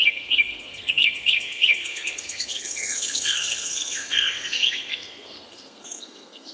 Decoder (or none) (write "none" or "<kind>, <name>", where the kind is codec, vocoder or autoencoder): codec, SNAC